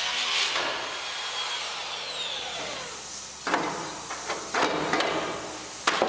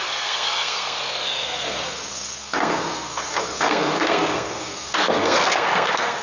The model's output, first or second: second